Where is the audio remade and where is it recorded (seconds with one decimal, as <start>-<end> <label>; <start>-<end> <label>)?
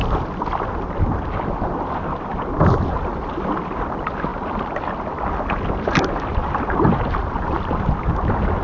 0.0-8.6 recorded